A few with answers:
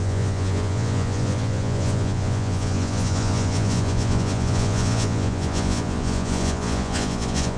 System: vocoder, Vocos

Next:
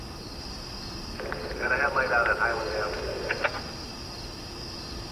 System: none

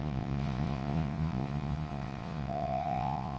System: vocoder, Vocos